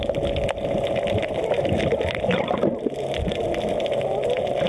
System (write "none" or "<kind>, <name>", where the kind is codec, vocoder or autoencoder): none